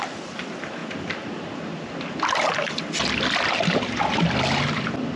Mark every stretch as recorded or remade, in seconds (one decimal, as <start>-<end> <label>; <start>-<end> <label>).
0.0-5.2 recorded